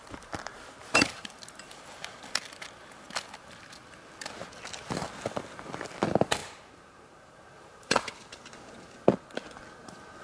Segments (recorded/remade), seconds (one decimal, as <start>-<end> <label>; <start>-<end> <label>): 0.0-0.8 recorded; 0.8-1.3 remade; 1.3-6.4 recorded; 6.4-8.1 remade; 8.1-10.2 recorded